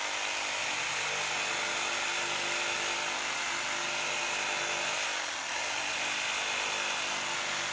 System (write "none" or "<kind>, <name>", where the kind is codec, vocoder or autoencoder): none